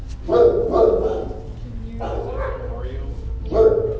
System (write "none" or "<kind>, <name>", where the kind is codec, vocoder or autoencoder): none